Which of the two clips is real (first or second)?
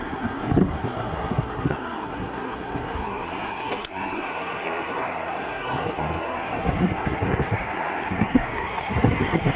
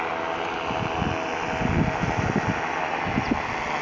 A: second